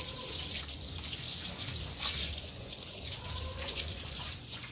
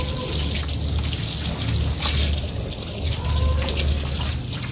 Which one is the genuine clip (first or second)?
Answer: second